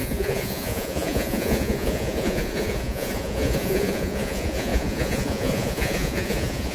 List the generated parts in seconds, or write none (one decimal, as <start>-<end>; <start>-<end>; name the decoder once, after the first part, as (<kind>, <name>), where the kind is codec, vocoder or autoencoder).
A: 0.0-6.7 (vocoder, Vocos)